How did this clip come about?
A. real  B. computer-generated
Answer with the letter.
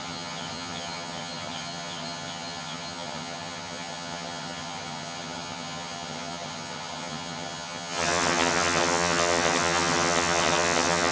B